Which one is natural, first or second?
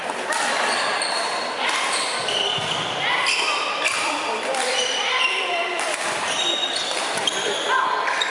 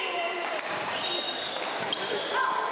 second